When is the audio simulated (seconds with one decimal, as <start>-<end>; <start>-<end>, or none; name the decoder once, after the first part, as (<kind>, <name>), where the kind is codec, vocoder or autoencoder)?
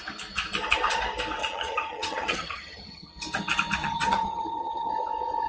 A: 1.4-3.1 (vocoder, HiFi-GAN); 3.8-4.9